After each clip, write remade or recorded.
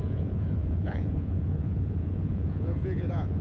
remade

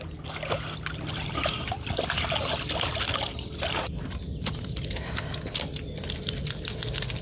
recorded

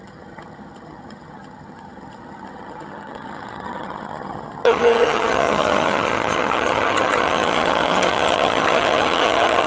remade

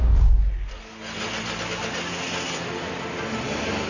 recorded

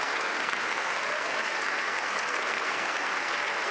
remade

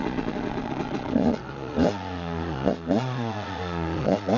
remade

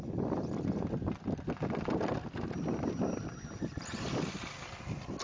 recorded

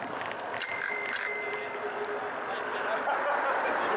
recorded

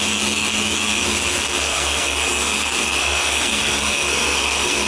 remade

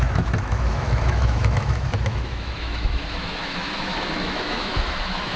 remade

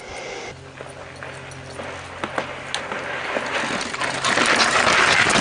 recorded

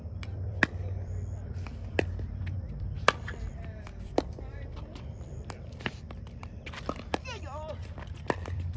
remade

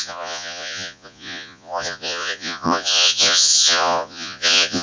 remade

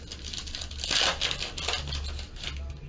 recorded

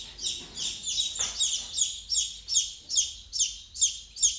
recorded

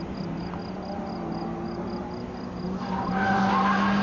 recorded